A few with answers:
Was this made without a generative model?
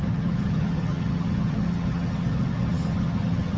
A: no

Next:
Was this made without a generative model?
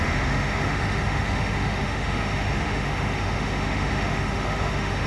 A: no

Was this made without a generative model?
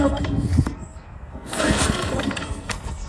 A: no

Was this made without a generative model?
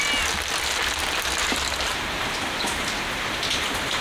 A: yes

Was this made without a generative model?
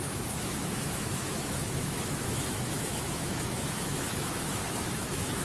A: no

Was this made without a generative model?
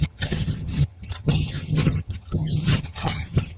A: no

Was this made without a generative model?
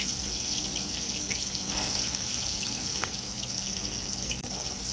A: no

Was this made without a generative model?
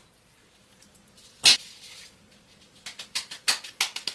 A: yes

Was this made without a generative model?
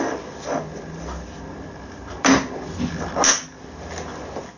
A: yes